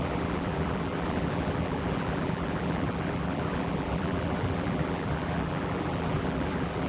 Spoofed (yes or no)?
yes